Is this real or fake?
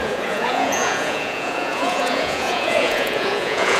fake